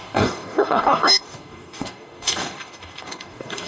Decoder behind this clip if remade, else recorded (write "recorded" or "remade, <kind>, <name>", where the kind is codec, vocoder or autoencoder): remade, codec, DAC